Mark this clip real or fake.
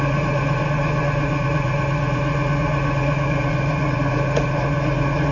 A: fake